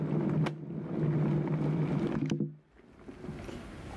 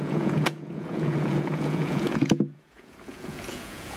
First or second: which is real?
first